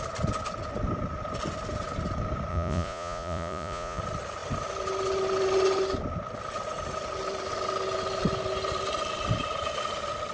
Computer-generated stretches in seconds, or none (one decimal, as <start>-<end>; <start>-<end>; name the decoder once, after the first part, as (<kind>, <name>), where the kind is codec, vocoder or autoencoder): 2.5-4.0 (vocoder, Vocos)